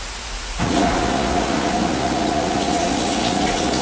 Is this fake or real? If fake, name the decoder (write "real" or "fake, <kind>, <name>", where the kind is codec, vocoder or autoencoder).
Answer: fake, vocoder, Vocos